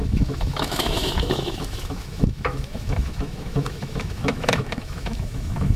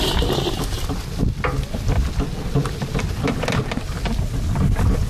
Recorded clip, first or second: second